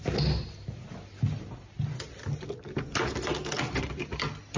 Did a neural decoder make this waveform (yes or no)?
no